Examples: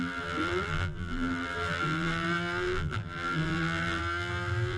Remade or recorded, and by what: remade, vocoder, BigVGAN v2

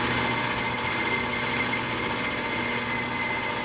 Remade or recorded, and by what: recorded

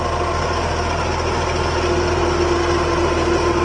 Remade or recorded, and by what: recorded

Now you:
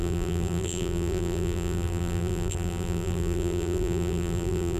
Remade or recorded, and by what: remade, vocoder, BigVGAN v2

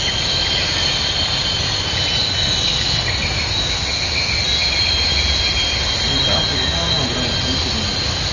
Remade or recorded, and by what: recorded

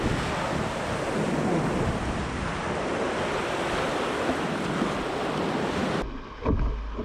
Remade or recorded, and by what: recorded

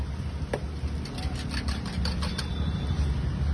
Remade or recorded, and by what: recorded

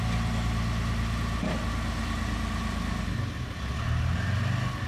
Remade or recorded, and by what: recorded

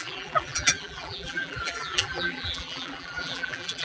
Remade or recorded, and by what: remade, vocoder, BigVGAN v2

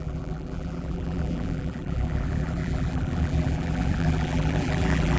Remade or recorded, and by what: remade, vocoder, BigVGAN v2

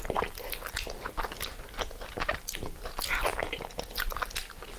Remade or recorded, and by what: recorded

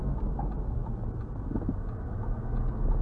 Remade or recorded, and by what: recorded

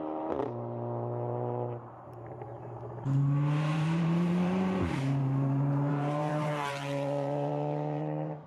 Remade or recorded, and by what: remade, vocoder, BigVGAN v2